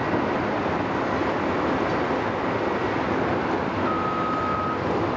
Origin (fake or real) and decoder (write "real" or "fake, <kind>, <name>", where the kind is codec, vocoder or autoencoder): real